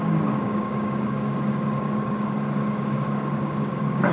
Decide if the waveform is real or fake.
fake